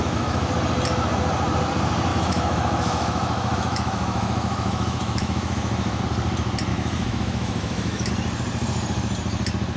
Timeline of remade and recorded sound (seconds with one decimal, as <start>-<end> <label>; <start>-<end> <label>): 0.0-0.5 remade; 0.5-2.1 recorded; 2.1-6.0 remade; 6.0-6.7 recorded; 6.7-8.1 remade; 8.1-9.8 recorded